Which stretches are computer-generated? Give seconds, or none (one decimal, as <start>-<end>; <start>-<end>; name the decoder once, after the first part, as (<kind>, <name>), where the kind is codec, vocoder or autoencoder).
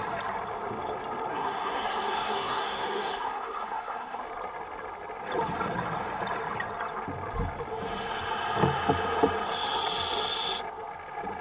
1.3-4.2 (codec, SNAC)